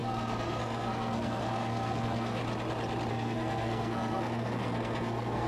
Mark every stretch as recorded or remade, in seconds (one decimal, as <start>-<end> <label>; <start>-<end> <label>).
0.0-2.4 remade; 2.4-3.1 recorded; 3.1-5.5 remade

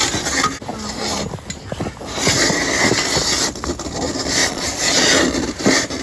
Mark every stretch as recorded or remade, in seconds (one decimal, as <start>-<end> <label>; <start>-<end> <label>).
0.0-4.4 recorded; 4.4-5.1 remade; 5.1-6.0 recorded

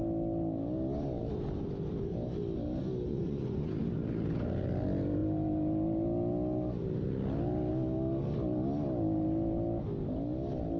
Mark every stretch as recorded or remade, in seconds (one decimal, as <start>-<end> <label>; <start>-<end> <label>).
0.0-3.1 recorded; 3.1-3.7 remade; 3.7-10.8 recorded

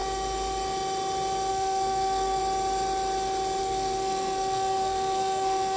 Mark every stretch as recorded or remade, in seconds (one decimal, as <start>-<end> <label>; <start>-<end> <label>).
0.0-1.5 recorded; 1.5-2.4 remade; 2.4-3.6 recorded; 3.6-5.8 remade

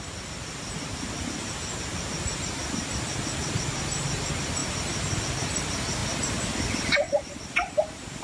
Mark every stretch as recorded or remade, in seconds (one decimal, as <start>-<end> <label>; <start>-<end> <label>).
0.0-1.9 recorded; 1.9-2.5 remade; 2.5-8.2 recorded

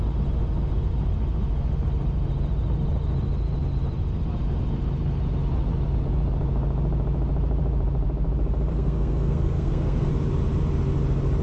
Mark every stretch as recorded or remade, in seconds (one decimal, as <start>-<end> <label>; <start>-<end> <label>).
0.0-8.7 recorded; 8.7-10.1 remade; 10.1-11.4 recorded